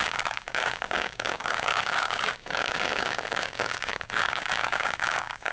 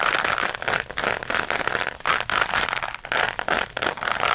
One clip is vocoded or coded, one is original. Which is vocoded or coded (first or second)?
first